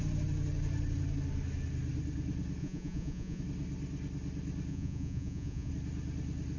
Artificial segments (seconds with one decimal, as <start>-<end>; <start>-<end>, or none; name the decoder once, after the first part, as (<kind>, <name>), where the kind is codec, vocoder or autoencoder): 2.6-3.4 (vocoder, Vocos); 4.7-5.7